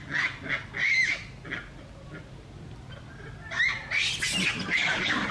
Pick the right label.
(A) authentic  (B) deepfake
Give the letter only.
A